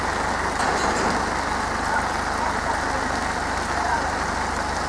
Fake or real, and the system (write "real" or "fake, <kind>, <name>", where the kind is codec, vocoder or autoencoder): real